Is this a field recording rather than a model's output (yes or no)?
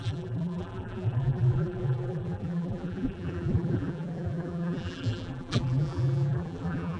no